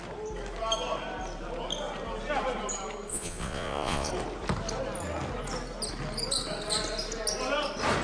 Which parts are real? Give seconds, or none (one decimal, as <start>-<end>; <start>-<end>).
0.0-3.1; 4.1-8.0